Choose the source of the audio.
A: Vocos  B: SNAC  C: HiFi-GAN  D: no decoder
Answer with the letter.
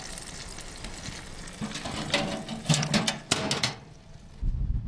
D